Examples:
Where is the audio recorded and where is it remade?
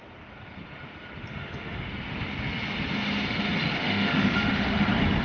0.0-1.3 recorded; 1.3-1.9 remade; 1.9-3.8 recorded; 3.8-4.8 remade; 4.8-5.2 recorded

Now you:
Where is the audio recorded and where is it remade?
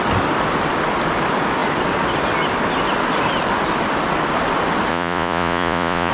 0.0-4.9 recorded; 4.9-6.1 remade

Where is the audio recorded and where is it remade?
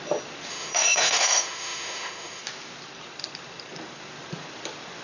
0.0-0.5 recorded; 0.5-2.4 remade; 2.4-5.0 recorded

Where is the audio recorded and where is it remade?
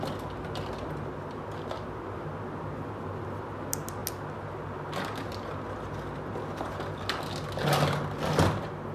0.0-8.9 recorded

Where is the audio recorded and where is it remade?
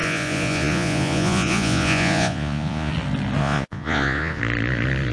0.0-2.9 remade; 2.9-3.4 recorded; 3.4-4.4 remade; 4.4-5.1 recorded